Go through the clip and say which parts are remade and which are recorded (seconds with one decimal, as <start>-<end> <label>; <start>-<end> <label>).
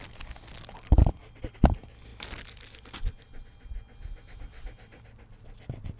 0.0-6.0 recorded